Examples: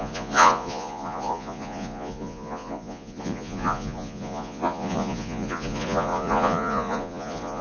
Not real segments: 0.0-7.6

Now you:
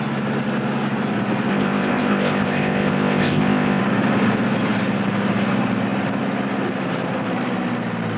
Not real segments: 1.5-3.8

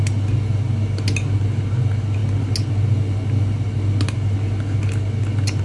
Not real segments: none

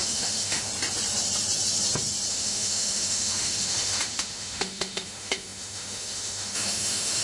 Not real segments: 0.0-0.7; 2.3-7.2

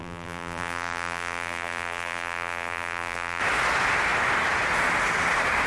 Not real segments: 0.0-3.4

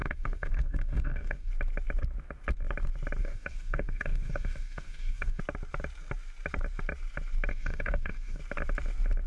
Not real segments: 0.0-1.5; 3.2-5.4; 7.5-8.4